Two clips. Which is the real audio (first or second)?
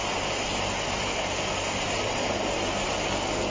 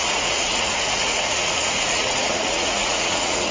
first